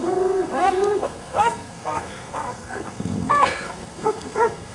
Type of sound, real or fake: fake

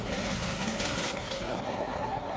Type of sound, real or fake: fake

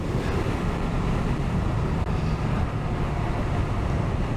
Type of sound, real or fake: real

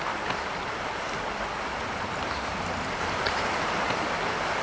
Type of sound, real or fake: real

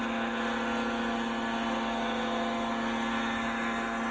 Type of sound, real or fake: real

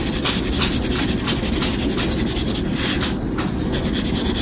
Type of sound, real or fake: real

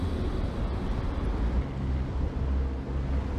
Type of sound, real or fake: real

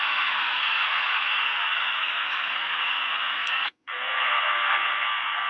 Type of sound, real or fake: fake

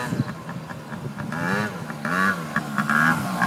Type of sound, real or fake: real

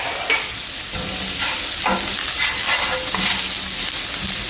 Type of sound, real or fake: real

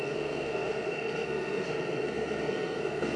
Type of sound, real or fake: fake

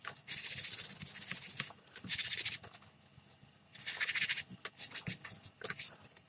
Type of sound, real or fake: real